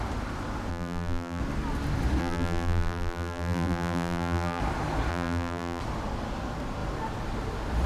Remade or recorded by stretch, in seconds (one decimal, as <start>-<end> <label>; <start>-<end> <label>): 0.0-0.7 recorded; 0.7-1.4 remade; 1.4-2.2 recorded; 2.2-4.6 remade; 4.6-5.1 recorded; 5.1-5.8 remade; 5.8-7.9 recorded